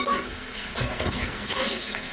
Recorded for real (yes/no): no